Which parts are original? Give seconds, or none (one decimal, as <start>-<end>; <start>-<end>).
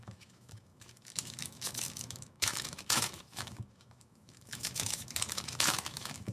none